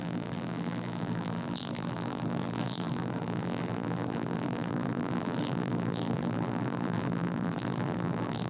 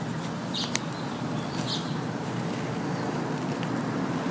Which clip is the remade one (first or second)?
first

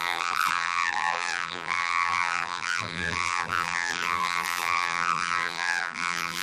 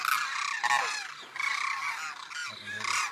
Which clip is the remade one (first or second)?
first